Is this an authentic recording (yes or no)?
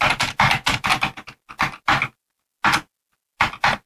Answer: yes